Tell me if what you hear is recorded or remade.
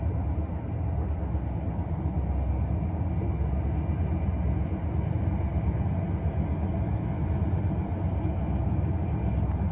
recorded